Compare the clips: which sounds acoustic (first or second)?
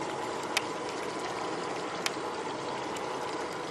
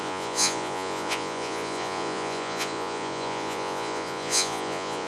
first